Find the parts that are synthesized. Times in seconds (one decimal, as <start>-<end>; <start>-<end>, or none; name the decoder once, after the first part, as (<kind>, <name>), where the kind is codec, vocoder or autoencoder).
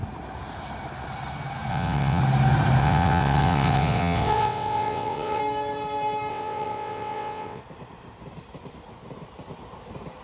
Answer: 1.7-2.2 (vocoder, WaveNeXt); 2.8-5.4; 6.3-7.6